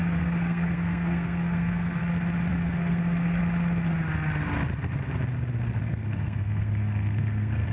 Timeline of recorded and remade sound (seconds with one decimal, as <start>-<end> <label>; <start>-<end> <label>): 0.0-2.0 remade; 2.0-2.5 recorded; 2.5-3.4 remade; 3.4-5.8 recorded; 5.8-7.7 remade